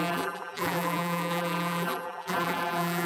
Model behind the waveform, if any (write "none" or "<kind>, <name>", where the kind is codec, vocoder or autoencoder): vocoder, BigVGAN v2